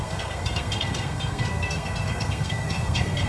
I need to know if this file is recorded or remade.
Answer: remade